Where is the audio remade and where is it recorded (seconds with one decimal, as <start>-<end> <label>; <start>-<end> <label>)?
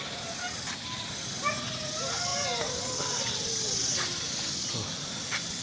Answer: 0.0-5.6 recorded